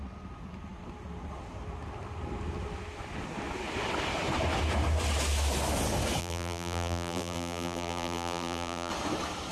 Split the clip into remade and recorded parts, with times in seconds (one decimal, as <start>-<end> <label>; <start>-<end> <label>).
0.0-6.2 recorded; 6.2-8.9 remade; 8.9-9.5 recorded